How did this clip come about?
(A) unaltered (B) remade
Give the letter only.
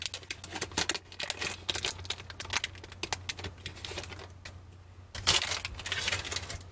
A